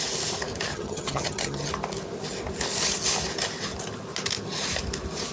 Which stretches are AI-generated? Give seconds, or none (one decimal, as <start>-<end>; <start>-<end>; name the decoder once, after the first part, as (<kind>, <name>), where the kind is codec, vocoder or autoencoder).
0.7-1.7 (vocoder, HiFi-GAN)